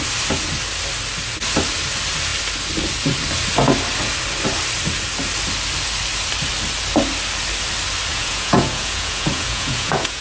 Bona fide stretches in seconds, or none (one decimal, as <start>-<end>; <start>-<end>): 0.0-8.1

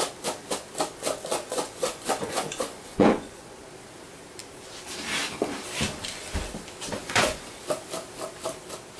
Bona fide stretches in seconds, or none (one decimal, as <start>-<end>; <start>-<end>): 0.0-1.3; 3.6-7.0; 7.6-9.0

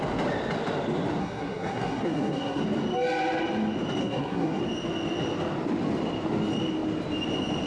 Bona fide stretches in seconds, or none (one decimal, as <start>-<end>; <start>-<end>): 0.0-1.2; 2.6-4.0; 4.6-7.7

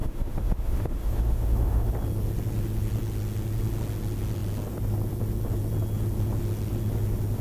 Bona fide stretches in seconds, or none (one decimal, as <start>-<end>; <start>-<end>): 1.9-7.4

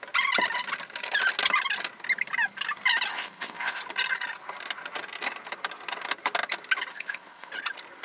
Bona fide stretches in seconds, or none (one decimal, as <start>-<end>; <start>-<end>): 0.0-3.1; 3.8-6.9; 7.5-8.0

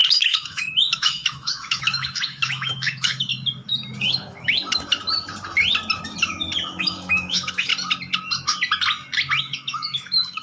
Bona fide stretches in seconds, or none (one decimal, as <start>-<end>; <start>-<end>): 3.3-4.0; 4.6-6.7; 7.7-9.4

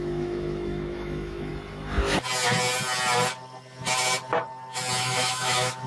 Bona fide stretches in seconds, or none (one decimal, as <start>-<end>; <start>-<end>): 1.5-5.0

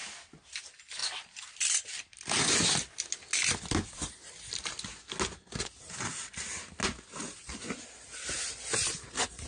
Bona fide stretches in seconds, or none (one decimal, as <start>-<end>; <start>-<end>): 0.0-9.5